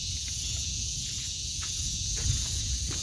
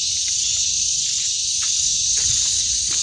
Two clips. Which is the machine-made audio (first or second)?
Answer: first